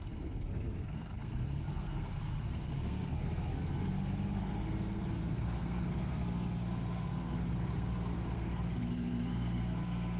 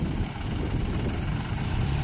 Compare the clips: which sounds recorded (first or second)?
second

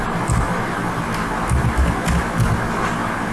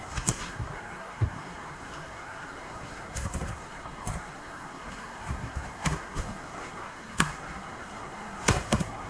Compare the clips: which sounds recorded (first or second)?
first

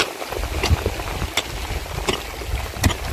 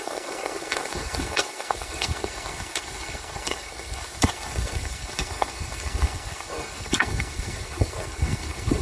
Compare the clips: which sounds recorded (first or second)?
first